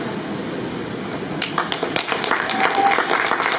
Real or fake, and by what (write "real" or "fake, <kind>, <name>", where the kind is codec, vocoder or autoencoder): real